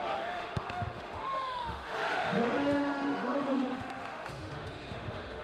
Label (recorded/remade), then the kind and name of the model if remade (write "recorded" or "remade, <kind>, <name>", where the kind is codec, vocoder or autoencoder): remade, autoencoder, DAC-VAE